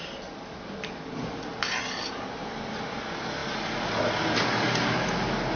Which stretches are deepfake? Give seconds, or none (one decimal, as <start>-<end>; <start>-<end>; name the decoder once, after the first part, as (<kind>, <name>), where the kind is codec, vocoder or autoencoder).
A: none